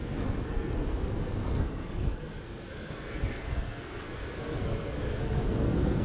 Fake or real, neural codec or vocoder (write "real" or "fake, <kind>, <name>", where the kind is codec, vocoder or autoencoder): fake, codec, SNAC